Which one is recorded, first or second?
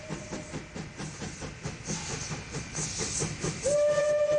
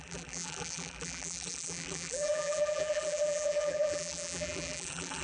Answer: first